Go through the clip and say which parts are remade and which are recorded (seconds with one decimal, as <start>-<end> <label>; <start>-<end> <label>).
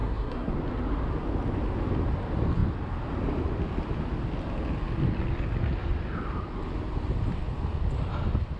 0.0-0.5 remade; 0.5-8.6 recorded